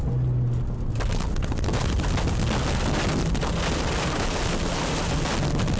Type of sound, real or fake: real